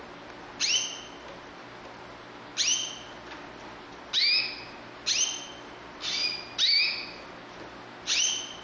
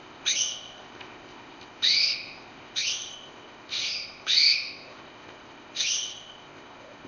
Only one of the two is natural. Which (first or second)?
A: first